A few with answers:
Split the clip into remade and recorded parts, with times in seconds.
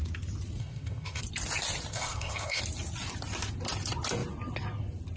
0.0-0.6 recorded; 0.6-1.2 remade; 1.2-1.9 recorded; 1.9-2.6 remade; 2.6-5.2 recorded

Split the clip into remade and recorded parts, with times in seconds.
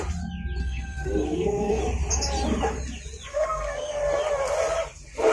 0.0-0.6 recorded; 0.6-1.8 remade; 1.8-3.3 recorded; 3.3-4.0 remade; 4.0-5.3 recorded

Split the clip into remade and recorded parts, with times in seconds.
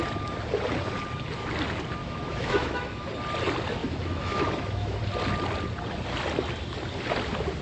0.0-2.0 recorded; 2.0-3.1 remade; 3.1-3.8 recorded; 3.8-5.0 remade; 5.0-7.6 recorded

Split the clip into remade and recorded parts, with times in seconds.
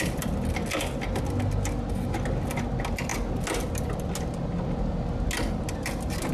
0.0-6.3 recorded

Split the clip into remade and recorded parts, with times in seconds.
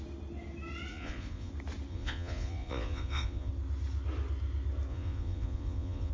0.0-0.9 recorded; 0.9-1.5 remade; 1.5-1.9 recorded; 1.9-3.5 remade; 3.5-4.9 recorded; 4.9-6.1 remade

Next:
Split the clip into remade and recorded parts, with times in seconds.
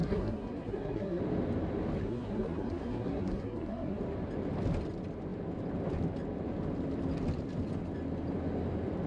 0.0-1.2 remade; 1.2-2.0 recorded; 2.0-4.0 remade; 4.0-9.1 recorded